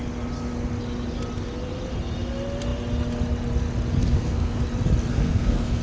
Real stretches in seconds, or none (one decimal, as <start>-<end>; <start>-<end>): 0.0-4.0; 4.6-5.1